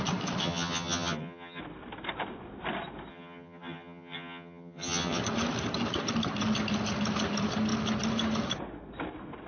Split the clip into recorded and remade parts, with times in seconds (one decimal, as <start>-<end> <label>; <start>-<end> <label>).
0.0-0.4 recorded; 0.4-1.6 remade; 1.6-3.1 recorded; 3.1-5.2 remade; 5.2-9.5 recorded